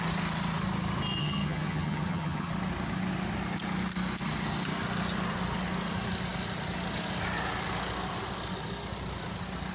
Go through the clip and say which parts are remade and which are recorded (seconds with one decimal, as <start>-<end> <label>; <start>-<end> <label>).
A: 0.0-1.2 recorded; 1.2-2.5 remade; 2.5-9.7 recorded